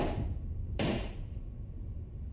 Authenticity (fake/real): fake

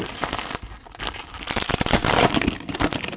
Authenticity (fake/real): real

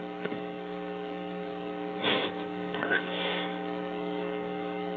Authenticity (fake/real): fake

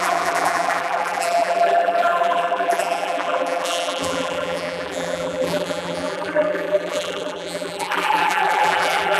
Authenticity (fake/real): fake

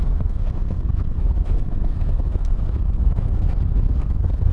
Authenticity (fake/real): fake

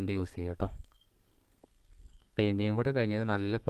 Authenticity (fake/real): fake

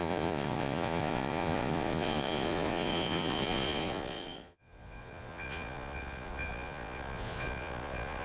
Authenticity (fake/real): fake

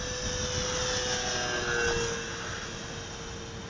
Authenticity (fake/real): real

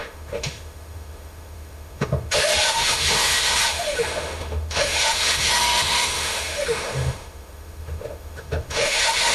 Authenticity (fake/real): fake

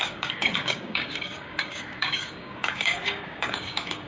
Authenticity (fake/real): fake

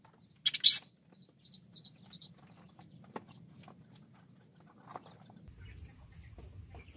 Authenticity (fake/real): real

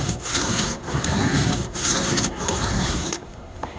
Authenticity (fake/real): fake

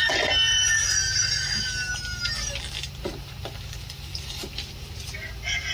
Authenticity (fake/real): real